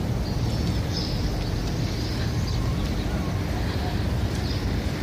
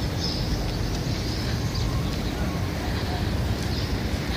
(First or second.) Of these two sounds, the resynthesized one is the second